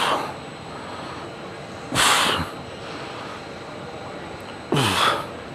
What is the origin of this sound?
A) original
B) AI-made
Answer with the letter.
A